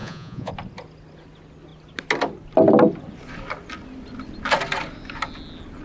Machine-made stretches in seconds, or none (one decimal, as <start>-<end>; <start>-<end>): 0.0-0.5